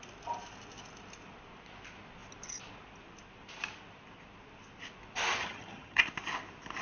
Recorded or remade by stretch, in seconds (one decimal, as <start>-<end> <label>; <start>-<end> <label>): 0.0-5.4 recorded; 5.4-6.0 remade; 6.0-6.8 recorded